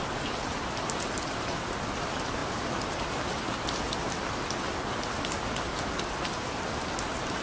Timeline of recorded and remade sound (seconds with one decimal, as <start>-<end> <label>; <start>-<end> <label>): 0.0-7.4 recorded